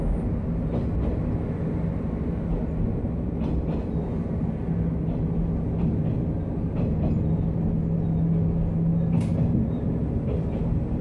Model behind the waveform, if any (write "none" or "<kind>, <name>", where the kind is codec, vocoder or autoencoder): none